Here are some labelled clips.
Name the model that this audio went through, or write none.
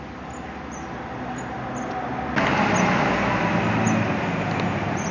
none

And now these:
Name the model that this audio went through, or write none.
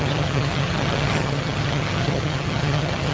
vocoder, HiFi-GAN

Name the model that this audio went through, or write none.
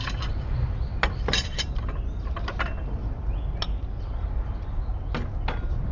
none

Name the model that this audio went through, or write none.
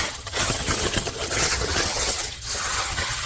vocoder, HiFi-GAN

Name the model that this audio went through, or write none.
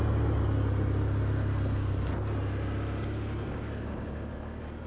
none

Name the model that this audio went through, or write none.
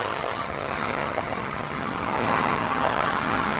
vocoder, HiFi-GAN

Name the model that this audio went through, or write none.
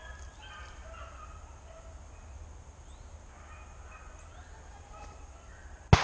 none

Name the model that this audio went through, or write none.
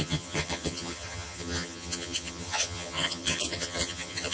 vocoder, HiFi-GAN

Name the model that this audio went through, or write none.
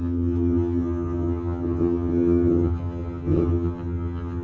vocoder, HiFi-GAN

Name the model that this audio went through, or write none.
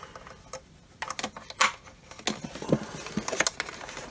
none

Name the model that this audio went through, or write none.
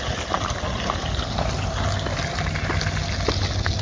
none